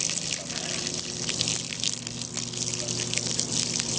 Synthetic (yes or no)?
no